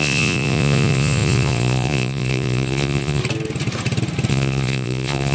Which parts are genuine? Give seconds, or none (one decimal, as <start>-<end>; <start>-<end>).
3.2-4.3